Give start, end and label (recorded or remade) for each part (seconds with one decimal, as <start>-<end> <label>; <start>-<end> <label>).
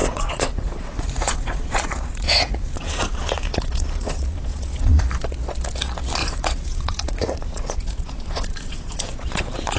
0.0-5.0 remade; 5.0-6.2 recorded; 6.2-9.8 remade